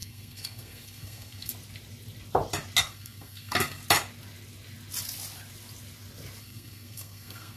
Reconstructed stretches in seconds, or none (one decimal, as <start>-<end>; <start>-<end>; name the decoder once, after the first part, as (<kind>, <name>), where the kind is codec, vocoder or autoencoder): 0.0-1.5 (codec, SNAC); 2.8-3.8; 6.4-7.6